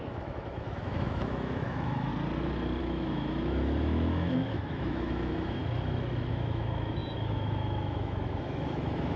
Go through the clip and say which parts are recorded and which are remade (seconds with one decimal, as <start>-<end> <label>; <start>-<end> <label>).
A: 0.0-2.1 remade; 2.1-2.8 recorded; 2.8-5.6 remade; 5.6-6.3 recorded; 6.3-9.2 remade